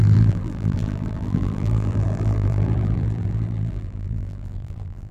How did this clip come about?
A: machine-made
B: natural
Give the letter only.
A